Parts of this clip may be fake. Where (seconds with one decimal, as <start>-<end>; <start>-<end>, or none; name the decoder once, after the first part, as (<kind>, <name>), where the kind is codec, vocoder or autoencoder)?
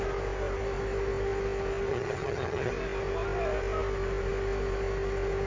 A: 1.9-2.7 (vocoder, HiFi-GAN)